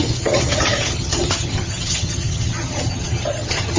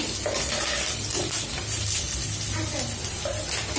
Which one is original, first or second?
second